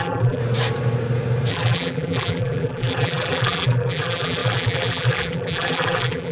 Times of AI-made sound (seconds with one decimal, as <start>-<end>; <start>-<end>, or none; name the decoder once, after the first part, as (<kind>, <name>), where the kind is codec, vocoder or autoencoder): 0.0-0.4 (vocoder, BigVGAN v2); 1.5-6.3